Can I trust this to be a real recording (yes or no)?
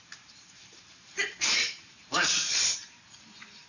no